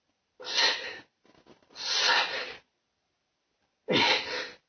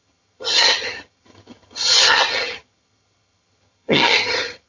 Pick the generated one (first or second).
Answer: second